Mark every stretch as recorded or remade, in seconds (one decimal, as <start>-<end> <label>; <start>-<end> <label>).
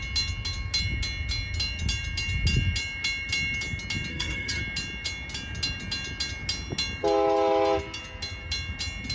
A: 0.0-4.1 recorded; 4.1-4.6 remade; 4.6-9.1 recorded